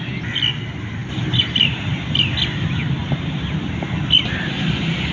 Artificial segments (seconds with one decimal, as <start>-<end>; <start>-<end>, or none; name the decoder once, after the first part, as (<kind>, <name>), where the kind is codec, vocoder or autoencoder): 1.0-2.2 (vocoder, BigVGAN v2); 3.0-4.1